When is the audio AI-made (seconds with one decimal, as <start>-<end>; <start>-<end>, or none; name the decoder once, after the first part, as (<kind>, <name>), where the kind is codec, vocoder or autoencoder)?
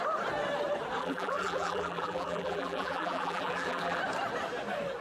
1.0-4.0 (vocoder, BigVGAN v2)